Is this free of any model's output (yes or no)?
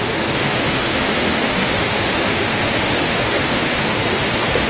no